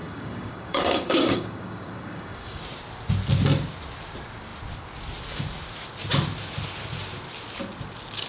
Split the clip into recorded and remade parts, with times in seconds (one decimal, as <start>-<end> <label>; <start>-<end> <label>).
0.0-2.6 remade; 2.6-8.3 recorded